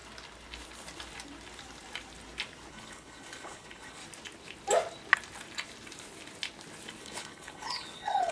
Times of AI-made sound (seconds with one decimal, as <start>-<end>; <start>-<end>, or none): 2.7-4.0; 7.0-8.3